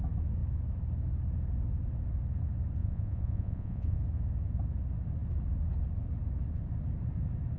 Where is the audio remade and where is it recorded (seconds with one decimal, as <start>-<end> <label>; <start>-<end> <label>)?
0.0-2.8 recorded; 2.8-4.0 remade; 4.0-7.6 recorded